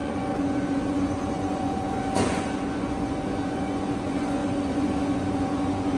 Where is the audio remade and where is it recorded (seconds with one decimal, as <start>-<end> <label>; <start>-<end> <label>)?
0.0-6.0 remade